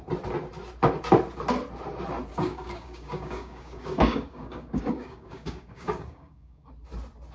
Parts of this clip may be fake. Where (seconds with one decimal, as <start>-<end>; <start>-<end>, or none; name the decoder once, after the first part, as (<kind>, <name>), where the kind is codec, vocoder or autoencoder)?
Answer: 2.3-6.7 (codec, DAC)